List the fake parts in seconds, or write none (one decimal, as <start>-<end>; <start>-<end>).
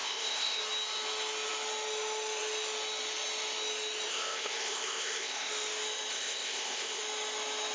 0.0-0.6; 4.1-5.5; 6.1-7.0